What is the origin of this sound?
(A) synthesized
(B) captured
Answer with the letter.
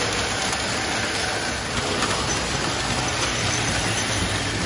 B